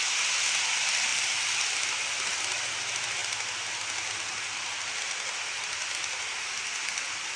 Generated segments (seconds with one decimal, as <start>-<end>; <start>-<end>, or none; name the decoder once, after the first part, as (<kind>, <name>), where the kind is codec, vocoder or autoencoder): none